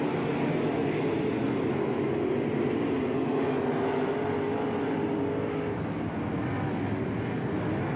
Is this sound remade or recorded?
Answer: recorded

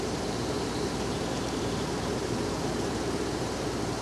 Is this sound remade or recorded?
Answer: remade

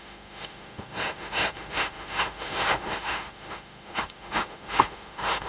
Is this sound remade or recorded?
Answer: remade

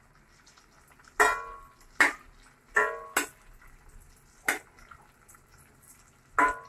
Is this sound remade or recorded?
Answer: recorded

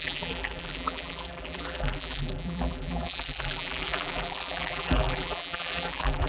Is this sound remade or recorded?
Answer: remade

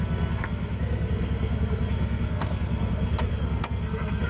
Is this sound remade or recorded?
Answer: remade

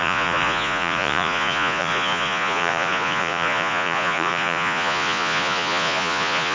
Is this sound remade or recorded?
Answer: remade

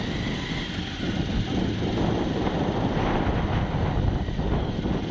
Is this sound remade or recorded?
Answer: recorded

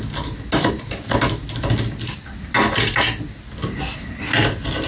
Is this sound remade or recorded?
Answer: recorded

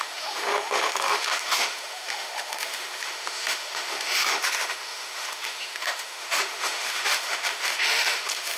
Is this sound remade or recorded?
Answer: remade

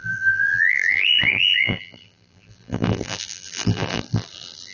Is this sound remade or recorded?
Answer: remade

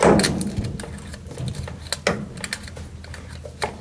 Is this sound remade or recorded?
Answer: recorded